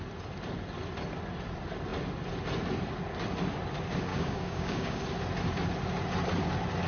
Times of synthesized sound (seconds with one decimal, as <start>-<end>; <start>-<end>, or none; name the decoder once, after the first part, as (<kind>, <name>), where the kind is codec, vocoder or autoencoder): 4.1-5.0 (codec, DAC)